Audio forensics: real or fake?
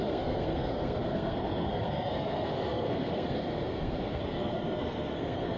fake